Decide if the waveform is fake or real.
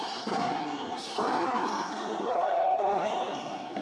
fake